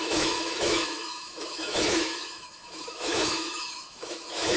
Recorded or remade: remade